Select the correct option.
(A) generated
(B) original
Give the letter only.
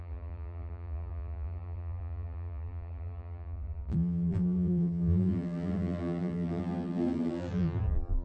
A